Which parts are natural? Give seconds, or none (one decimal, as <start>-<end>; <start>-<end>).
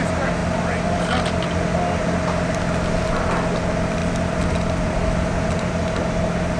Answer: 0.0-6.6